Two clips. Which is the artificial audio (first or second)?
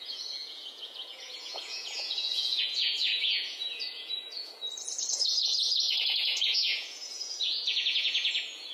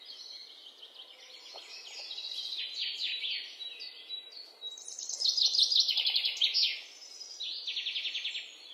first